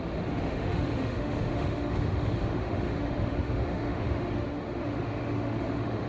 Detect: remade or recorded remade